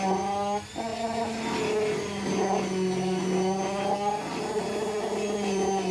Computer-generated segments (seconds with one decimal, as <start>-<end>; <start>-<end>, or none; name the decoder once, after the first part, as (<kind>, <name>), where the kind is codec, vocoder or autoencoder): none